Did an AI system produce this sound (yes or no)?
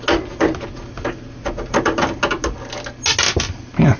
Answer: no